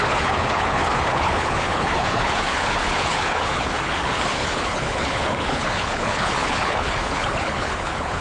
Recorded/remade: remade